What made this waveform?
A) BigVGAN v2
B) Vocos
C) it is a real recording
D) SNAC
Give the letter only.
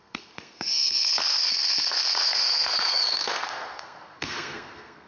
D